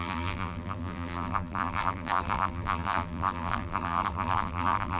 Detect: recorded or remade remade